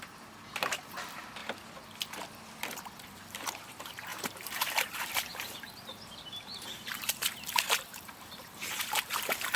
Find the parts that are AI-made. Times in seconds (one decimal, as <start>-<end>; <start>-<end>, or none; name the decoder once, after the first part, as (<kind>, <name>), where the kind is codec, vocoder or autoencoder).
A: 0.0-1.4 (vocoder, BigVGAN v2); 2.8-9.6